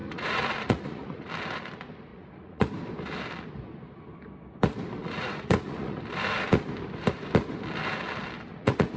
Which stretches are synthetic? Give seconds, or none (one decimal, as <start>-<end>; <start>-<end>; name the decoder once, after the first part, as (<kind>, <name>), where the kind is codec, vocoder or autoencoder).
0.0-1.3 (vocoder, Vocos); 2.1-2.7; 5.0-6.0; 8.5-9.0